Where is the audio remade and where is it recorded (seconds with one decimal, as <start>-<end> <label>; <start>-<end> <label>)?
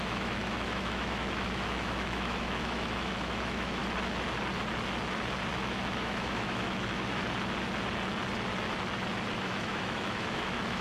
0.0-3.8 remade; 3.8-5.5 recorded; 5.5-7.2 remade; 7.2-9.3 recorded; 9.3-10.8 remade